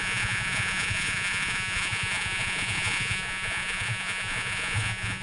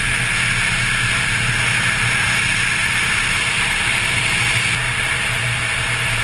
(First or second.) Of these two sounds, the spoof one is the first